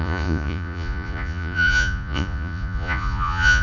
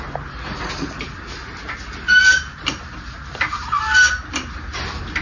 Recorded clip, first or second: second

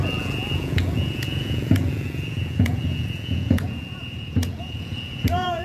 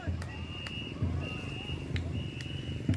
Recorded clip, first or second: second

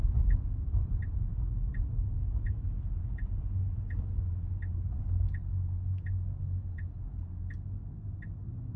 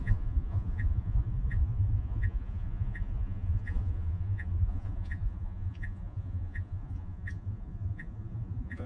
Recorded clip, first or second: first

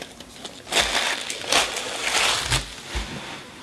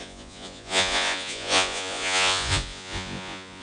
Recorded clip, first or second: first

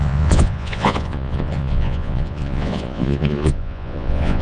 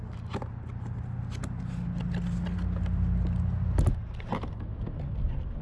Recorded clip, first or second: second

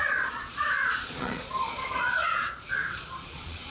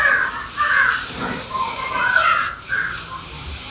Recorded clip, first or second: second